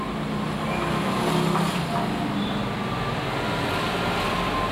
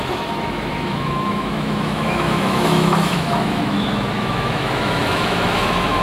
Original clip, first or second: first